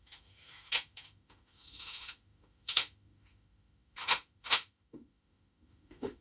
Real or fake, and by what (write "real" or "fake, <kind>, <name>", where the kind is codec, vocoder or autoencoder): fake, autoencoder, DAC-VAE